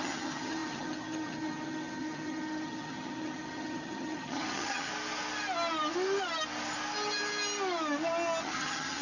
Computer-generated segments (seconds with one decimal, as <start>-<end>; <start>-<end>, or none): 0.0-4.9; 8.4-9.0